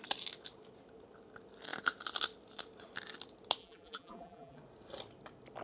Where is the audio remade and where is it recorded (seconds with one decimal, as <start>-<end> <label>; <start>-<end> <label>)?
0.0-3.6 recorded; 3.6-4.6 remade; 4.6-5.6 recorded